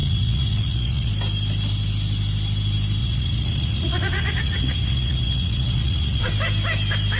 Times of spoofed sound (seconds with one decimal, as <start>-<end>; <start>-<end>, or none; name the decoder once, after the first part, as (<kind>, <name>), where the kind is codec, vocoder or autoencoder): 0.0-1.1 (vocoder, Vocos); 3.0-6.3